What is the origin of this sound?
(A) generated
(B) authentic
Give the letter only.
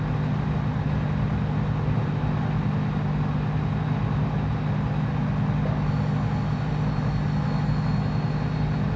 B